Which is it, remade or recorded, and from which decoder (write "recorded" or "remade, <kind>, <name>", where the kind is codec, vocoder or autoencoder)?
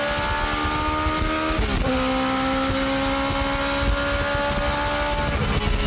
recorded